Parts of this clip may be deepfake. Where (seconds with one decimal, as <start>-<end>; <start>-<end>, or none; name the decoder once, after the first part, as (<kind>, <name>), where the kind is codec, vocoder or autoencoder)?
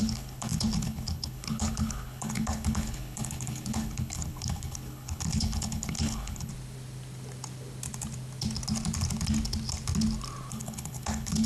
0.0-6.5 (codec, HILCodec); 10.5-11.5